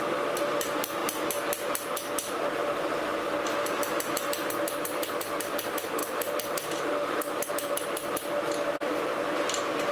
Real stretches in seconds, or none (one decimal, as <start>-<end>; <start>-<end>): 0.0-6.0; 7.5-9.9